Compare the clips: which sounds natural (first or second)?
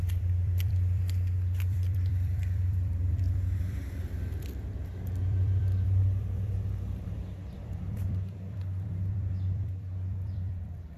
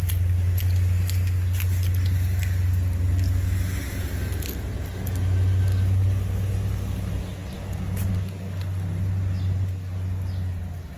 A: second